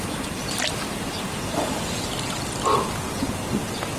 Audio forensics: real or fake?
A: real